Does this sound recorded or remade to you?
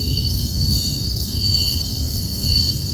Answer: remade